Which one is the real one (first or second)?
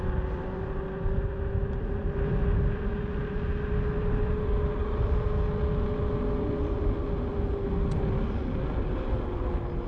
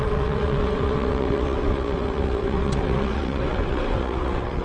first